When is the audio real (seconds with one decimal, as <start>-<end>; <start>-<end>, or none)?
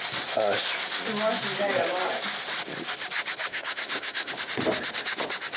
0.0-3.5; 4.3-5.6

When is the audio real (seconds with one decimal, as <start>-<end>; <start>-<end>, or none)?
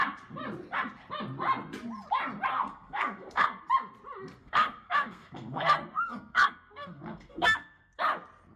0.0-2.5; 3.6-4.4; 8.0-8.6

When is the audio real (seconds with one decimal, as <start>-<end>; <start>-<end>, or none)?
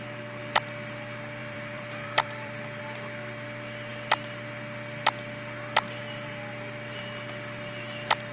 0.0-1.4; 2.8-8.3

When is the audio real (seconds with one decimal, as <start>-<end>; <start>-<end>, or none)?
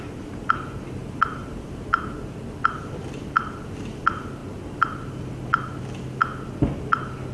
0.0-1.0; 3.8-4.4; 5.8-7.3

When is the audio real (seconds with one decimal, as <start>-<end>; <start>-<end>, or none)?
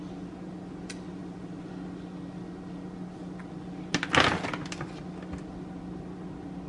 0.0-6.7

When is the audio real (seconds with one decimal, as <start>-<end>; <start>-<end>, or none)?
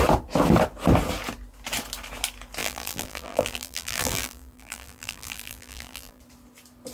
0.0-2.6; 6.2-6.9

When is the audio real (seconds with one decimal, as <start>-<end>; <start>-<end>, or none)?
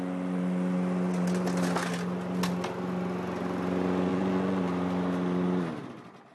0.0-4.1; 4.6-6.3